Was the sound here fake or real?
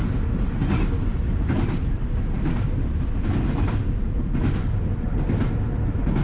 real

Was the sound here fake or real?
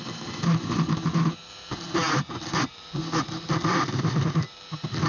real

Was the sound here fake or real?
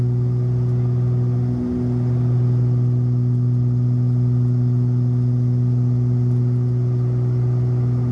real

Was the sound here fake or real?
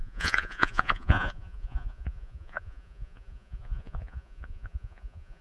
fake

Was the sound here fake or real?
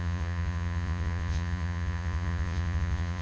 fake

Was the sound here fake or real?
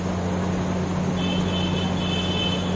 real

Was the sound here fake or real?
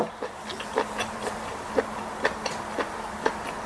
real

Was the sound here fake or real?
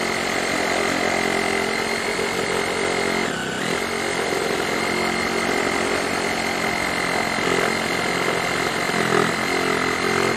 real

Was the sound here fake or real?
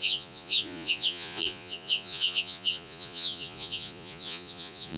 fake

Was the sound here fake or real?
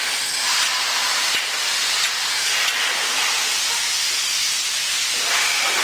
real